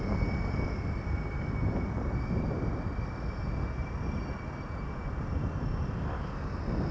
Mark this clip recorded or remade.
recorded